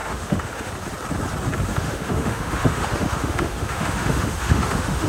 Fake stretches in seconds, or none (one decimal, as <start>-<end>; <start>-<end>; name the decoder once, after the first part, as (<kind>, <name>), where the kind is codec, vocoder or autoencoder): 0.0-0.7 (autoencoder, DAC-VAE); 1.7-5.1

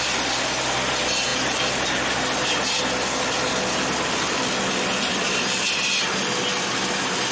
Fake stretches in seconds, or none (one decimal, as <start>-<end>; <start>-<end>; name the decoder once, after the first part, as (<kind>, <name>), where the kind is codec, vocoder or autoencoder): none

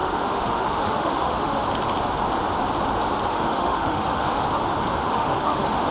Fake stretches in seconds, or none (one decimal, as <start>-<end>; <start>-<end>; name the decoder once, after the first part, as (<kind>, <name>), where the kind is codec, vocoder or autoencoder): 0.0-1.6 (autoencoder, DAC-VAE); 3.3-4.4; 4.9-5.9

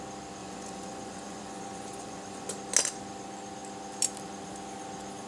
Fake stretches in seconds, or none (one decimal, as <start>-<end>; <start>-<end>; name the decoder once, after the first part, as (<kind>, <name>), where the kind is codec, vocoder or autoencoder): 0.4-2.5 (vocoder, Vocos)

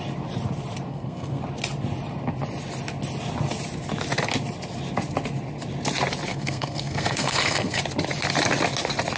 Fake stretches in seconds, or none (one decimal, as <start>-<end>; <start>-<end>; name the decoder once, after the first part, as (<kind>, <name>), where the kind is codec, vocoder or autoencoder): 0.9-1.4 (codec, SNAC); 6.3-7.8